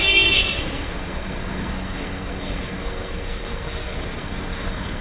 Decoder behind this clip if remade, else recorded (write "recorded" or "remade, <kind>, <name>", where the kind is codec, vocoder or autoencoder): remade, codec, SNAC